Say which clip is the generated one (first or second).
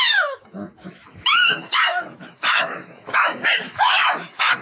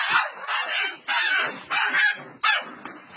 first